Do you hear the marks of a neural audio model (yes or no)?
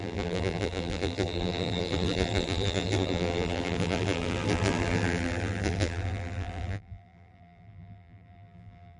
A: yes